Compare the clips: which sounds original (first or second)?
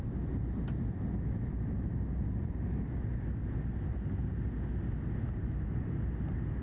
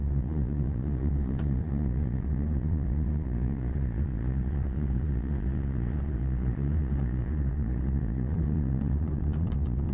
first